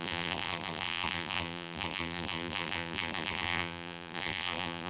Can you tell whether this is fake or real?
fake